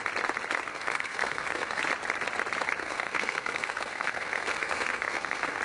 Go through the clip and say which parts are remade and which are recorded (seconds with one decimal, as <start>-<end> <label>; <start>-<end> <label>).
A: 0.0-0.7 recorded; 0.7-1.8 remade; 1.8-2.8 recorded; 2.8-5.6 remade